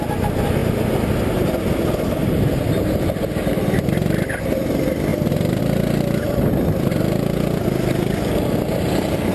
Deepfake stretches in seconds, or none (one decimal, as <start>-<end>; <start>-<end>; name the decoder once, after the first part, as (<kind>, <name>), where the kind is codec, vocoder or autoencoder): 2.2-3.9 (vocoder, BigVGAN v2)